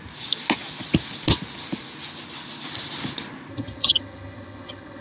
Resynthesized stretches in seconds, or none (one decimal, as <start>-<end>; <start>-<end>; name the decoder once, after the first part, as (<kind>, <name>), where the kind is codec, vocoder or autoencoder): 3.5-5.0 (vocoder, HiFi-GAN)